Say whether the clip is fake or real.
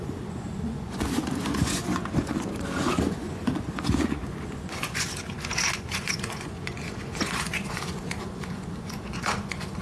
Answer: fake